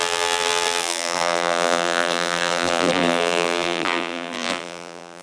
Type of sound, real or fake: fake